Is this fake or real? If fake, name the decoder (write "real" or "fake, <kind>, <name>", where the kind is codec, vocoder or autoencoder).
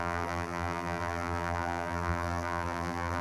fake, vocoder, BigVGAN v2